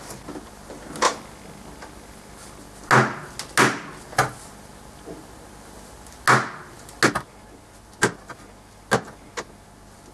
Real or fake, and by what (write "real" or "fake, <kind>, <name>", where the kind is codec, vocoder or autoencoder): real